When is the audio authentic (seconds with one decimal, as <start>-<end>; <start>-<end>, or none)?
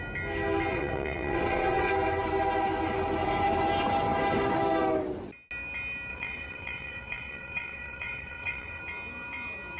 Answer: 0.0-0.7; 1.9-6.1; 8.8-9.8